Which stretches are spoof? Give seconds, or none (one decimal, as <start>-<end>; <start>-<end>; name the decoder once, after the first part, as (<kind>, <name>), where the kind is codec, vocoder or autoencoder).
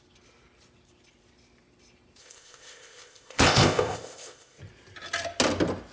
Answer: 2.2-4.6 (codec, ZipCodec)